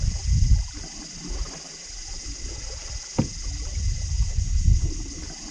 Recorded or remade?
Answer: recorded